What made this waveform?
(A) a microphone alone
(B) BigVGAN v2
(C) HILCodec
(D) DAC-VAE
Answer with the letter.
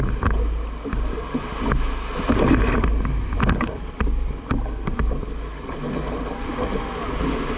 A